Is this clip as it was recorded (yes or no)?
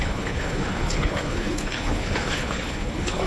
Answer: no